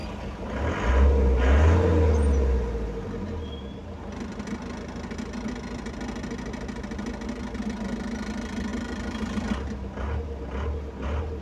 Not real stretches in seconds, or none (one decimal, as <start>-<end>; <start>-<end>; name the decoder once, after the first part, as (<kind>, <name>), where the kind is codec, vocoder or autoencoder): none